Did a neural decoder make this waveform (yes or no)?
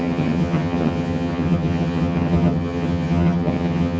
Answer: yes